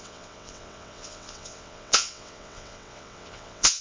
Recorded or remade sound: remade